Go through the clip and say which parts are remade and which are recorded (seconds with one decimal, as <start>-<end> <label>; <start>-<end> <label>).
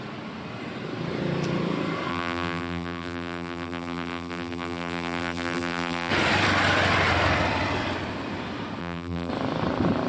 0.0-2.1 recorded; 2.1-6.1 remade; 6.1-8.8 recorded; 8.8-9.3 remade; 9.3-10.1 recorded